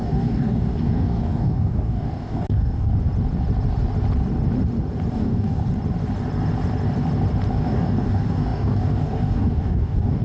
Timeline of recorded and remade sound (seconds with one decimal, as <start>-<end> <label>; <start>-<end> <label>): 0.0-2.9 remade; 2.9-5.1 recorded; 5.1-5.6 remade; 5.6-7.5 recorded; 7.5-10.2 remade